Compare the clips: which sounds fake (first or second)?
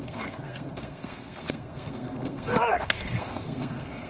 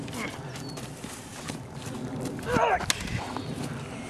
first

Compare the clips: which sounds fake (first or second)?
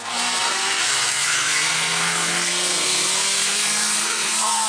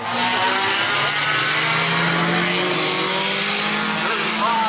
first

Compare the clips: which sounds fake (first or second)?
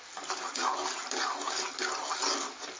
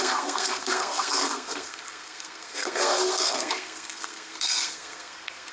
second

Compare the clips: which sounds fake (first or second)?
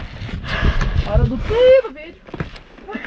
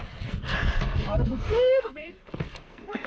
second